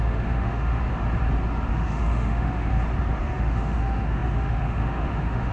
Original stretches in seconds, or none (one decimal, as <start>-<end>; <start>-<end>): 0.8-1.7; 2.7-3.2